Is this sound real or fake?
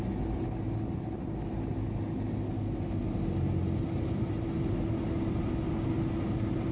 real